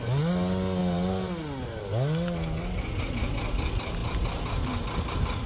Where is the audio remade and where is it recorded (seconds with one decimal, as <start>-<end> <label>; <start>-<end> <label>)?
0.0-5.5 recorded